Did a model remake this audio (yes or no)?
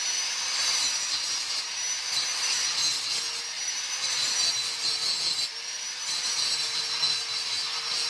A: no